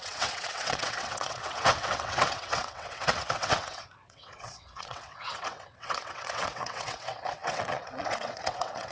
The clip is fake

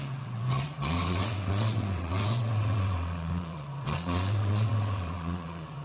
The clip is fake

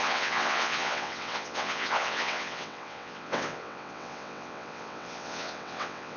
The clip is fake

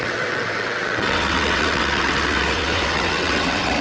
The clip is fake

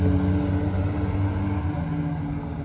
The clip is real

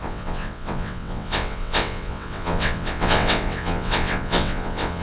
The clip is fake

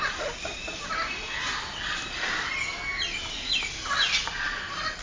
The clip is real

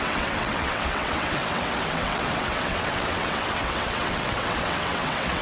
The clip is fake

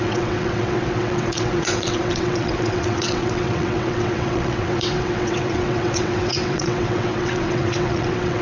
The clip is fake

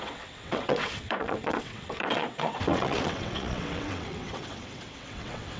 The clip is fake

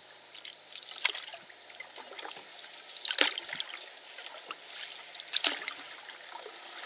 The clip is real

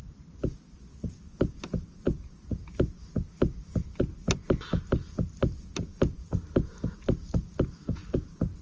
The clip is real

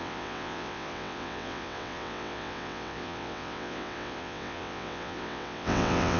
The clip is fake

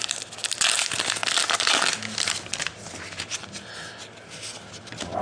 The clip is real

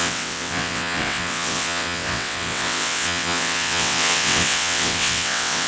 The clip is fake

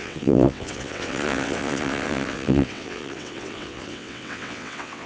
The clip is fake